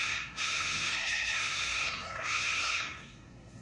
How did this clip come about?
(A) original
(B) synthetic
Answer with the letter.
B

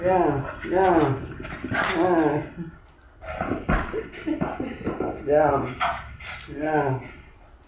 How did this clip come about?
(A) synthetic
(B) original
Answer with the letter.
B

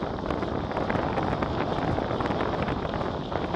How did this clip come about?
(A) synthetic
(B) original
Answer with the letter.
B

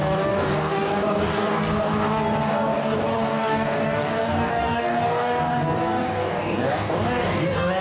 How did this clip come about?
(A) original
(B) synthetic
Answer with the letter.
B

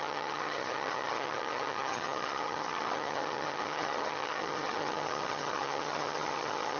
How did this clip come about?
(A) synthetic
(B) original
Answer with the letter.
A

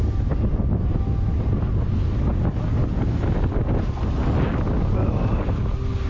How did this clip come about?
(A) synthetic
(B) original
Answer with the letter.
B